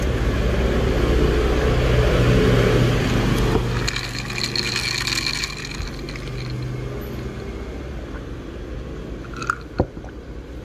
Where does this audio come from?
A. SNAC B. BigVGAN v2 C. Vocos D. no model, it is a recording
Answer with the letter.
D